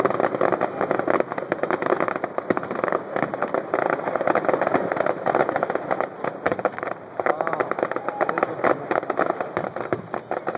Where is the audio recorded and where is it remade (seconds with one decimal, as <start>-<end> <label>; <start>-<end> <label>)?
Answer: 0.0-6.5 recorded; 6.5-7.3 remade; 7.3-10.6 recorded